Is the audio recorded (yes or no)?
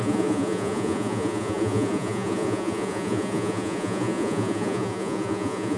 no